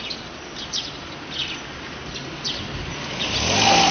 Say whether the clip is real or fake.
real